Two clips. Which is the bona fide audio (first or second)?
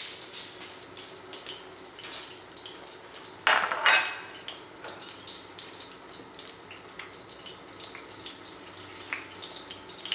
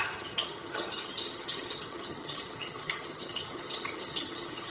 first